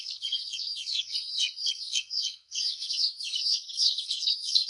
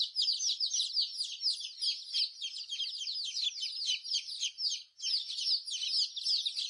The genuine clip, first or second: second